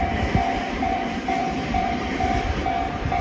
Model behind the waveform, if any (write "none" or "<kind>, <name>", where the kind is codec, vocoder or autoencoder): vocoder, BigVGAN v2